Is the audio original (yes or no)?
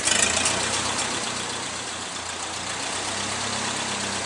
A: yes